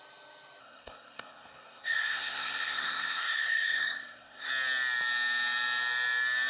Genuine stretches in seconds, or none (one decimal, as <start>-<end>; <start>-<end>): 0.0-0.6; 4.5-6.5